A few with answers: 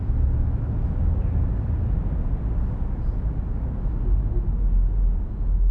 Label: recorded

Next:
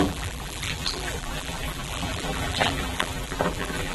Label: remade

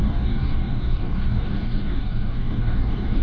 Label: remade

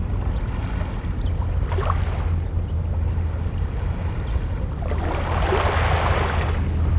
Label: recorded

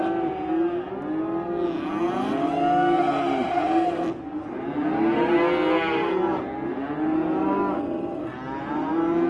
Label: recorded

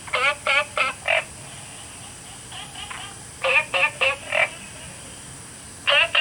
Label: recorded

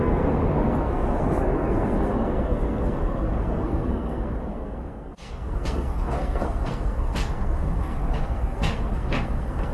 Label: remade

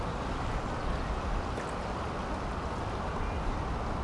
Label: recorded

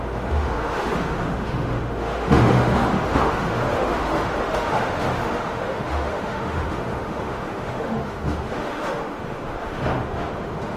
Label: remade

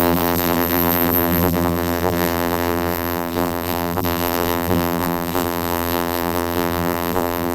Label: remade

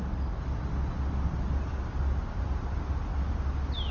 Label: recorded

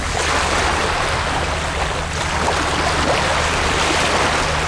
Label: recorded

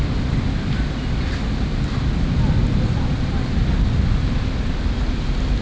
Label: recorded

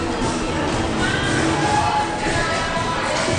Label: recorded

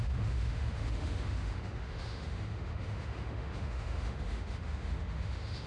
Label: remade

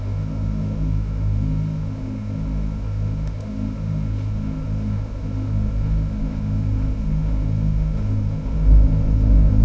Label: remade